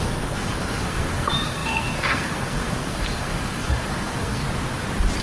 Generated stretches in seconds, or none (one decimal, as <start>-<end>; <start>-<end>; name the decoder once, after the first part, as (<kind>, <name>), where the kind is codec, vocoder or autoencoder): 0.0-4.4 (codec, SNAC)